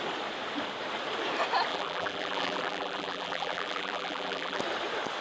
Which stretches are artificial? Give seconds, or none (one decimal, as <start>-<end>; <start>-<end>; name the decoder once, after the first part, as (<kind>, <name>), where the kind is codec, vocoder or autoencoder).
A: 1.7-4.6 (vocoder, BigVGAN v2)